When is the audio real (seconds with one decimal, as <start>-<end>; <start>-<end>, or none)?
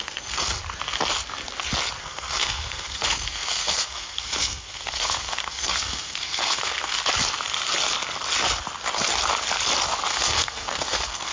0.6-2.0; 7.0-10.1